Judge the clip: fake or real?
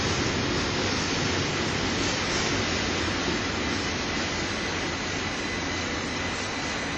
real